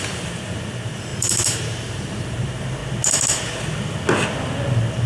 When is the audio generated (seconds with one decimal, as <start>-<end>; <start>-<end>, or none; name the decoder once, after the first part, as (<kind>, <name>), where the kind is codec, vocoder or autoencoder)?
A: 0.0-2.8 (vocoder, BigVGAN v2)

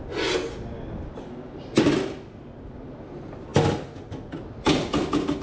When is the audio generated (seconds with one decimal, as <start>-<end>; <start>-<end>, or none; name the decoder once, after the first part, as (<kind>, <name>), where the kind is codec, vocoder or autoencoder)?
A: none

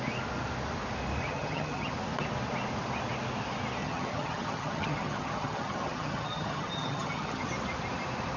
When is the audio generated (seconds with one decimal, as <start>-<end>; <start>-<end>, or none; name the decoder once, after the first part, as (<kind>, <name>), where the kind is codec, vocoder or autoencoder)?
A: 1.3-1.9 (vocoder, HiFi-GAN); 3.8-7.5

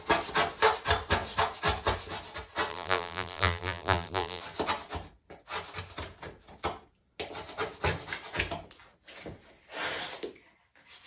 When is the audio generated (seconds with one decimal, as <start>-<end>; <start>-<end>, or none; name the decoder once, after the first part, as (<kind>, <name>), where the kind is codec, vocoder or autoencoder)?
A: 2.7-4.4 (vocoder, BigVGAN v2)

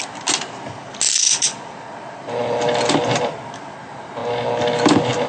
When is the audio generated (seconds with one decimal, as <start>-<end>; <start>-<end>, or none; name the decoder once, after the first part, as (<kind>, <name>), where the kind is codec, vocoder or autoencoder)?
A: none